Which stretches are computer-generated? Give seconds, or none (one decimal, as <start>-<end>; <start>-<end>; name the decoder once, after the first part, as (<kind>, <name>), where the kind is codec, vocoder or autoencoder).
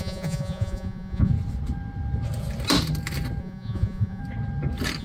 0.0-1.3 (vocoder, Vocos); 3.4-4.2